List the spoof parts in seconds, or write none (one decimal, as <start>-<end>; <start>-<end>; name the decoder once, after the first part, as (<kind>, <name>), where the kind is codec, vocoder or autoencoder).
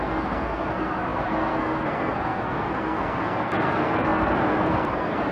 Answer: 0.0-5.3 (codec, SNAC)